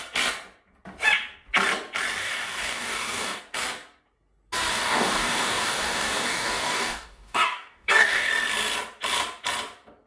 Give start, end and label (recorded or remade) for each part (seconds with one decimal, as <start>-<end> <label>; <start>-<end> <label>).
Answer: 0.0-2.2 recorded; 2.2-3.4 remade; 3.4-4.7 recorded; 4.7-8.3 remade; 8.3-10.1 recorded